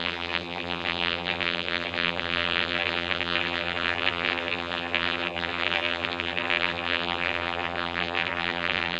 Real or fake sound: fake